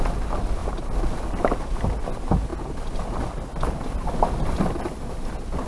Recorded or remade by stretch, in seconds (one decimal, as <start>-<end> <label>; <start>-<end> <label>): 0.0-5.7 recorded